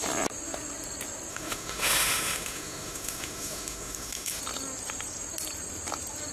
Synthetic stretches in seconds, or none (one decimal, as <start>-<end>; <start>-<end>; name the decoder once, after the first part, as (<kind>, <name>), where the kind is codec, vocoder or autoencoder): 1.3-4.4 (autoencoder, DAC-VAE)

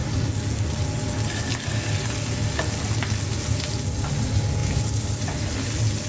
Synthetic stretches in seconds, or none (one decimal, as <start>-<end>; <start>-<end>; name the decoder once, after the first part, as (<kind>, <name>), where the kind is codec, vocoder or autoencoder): none

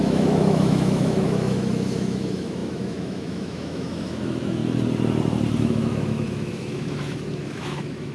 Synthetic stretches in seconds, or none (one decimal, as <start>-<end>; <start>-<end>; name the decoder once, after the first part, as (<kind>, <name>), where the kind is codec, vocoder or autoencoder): 0.0-4.6 (autoencoder, DAC-VAE); 5.6-8.1